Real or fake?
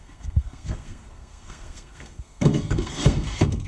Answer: fake